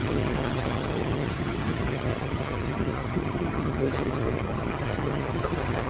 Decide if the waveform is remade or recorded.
remade